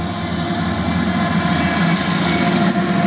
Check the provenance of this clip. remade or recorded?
recorded